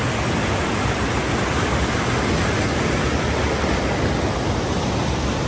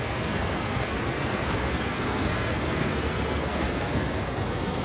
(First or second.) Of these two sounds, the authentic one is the first